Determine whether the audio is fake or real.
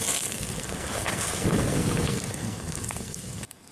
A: fake